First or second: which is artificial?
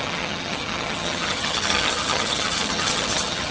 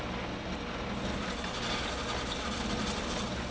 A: first